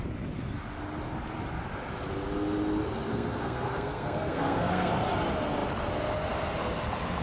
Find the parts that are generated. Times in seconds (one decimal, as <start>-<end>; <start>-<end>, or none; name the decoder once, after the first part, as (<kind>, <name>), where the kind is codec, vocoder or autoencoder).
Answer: 3.1-4.9 (codec, SNAC)